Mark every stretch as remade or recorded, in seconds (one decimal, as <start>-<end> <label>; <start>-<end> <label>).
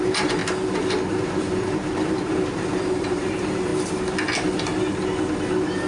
0.0-0.4 remade; 0.4-1.1 recorded; 1.1-3.7 remade; 3.7-5.9 recorded